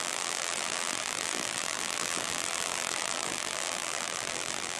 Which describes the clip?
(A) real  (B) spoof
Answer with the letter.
B